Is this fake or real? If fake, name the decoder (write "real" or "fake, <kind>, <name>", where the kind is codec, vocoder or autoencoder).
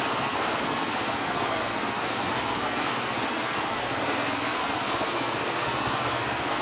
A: fake, codec, SNAC